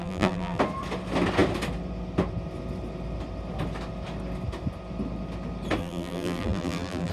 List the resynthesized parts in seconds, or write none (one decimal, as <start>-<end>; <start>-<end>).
0.0-0.6; 5.8-7.1